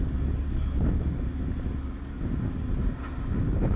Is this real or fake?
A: real